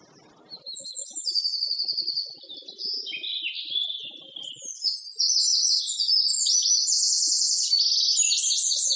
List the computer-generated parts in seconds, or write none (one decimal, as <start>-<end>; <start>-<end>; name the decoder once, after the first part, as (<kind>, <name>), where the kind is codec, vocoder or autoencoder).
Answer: none